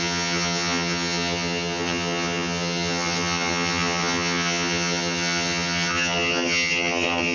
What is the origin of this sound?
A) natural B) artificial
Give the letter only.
B